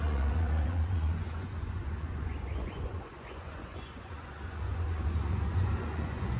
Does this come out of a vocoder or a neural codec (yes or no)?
yes